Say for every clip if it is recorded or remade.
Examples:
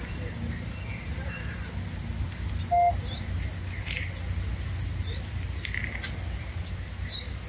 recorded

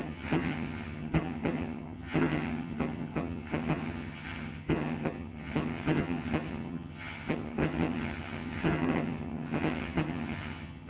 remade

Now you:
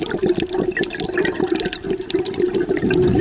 recorded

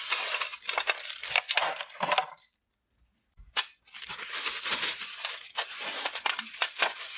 recorded